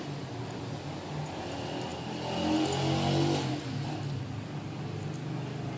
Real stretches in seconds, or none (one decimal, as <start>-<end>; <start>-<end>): 0.0-5.8

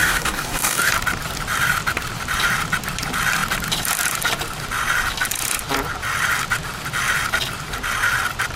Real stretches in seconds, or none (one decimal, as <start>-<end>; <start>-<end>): 0.9-8.6

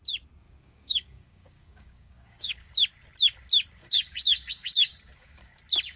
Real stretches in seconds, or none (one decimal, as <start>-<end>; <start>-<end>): 0.0-0.4; 2.7-3.8; 5.6-6.0

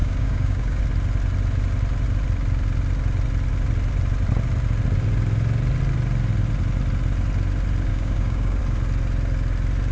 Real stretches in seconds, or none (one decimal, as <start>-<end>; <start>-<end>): 0.8-7.9; 8.6-9.9

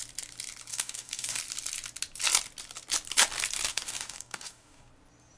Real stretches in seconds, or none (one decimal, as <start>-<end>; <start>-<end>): 0.0-0.7; 1.4-3.7; 4.9-5.4

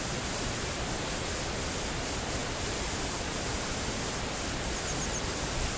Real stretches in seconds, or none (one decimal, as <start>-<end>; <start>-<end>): 0.0-5.8

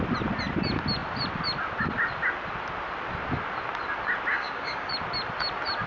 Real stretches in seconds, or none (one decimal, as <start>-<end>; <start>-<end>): 0.0-4.3; 4.9-5.9